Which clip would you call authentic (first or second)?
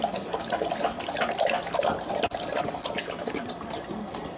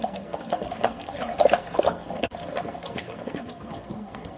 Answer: first